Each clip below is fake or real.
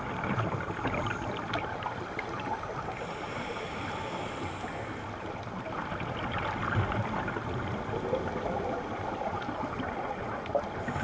fake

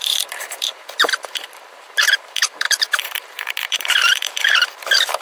fake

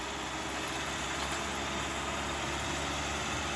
real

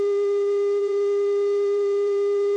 fake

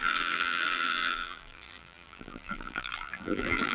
fake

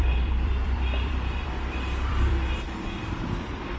fake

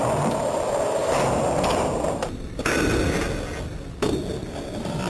real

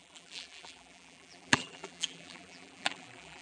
fake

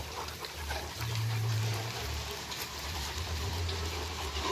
fake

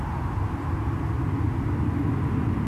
real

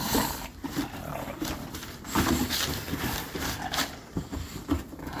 fake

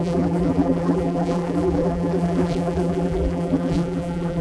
fake